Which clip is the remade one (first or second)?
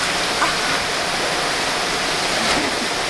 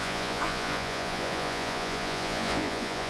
second